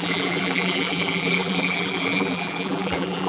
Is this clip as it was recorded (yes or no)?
no